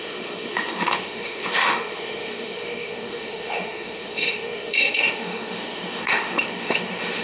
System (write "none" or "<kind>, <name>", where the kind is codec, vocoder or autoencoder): autoencoder, DAC-VAE